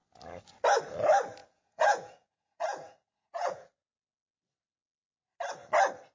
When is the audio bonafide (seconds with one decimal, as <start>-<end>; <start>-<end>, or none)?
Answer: 0.0-1.4; 3.7-6.1